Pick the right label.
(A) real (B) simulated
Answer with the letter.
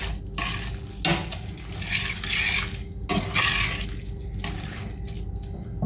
A